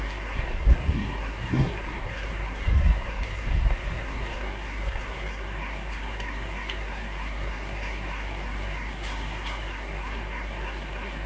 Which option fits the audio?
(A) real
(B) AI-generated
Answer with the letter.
B